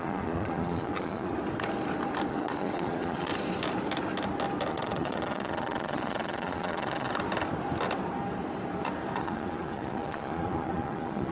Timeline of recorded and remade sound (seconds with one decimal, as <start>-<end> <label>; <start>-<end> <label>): 0.0-1.3 remade; 1.3-2.3 recorded; 2.3-3.3 remade; 3.3-4.7 recorded; 4.7-7.1 remade; 7.1-9.2 recorded; 9.2-11.3 remade